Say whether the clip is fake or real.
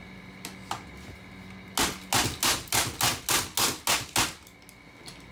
real